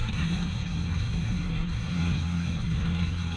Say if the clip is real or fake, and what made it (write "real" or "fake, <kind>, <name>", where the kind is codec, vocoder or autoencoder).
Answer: fake, codec, SNAC